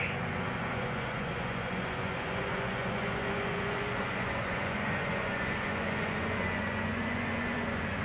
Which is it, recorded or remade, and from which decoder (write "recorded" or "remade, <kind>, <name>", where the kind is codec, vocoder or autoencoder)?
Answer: remade, vocoder, Vocos